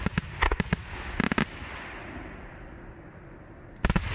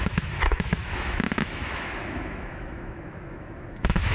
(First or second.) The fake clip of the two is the second